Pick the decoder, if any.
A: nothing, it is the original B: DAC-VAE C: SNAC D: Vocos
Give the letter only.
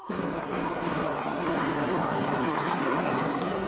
C